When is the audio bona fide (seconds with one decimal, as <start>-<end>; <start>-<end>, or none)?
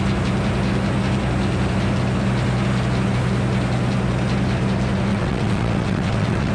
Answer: 0.0-5.1